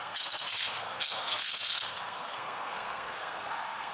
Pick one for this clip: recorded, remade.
remade